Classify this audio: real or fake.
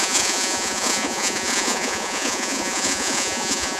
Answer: fake